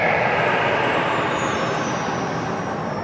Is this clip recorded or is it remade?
recorded